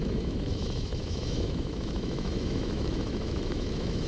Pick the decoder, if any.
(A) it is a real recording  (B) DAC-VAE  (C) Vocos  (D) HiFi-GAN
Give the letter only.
B